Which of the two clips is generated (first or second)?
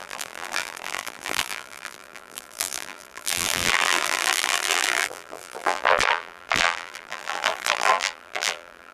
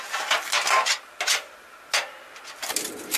first